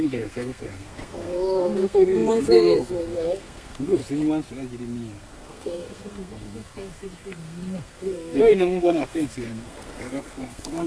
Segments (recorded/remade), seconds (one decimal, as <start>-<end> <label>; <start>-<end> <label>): 0.0-4.0 remade; 4.0-5.2 recorded; 5.2-10.9 remade